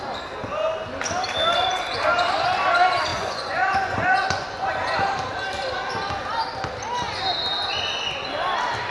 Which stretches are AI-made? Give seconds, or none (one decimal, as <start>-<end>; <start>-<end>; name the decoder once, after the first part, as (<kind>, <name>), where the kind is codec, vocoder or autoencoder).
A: 3.1-4.7 (vocoder, Vocos)